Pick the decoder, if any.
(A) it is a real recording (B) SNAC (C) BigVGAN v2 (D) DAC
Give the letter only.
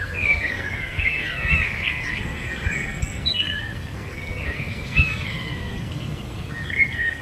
B